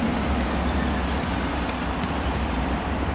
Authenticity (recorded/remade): recorded